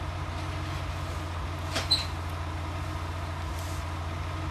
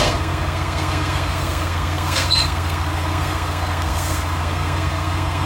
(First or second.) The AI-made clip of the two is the second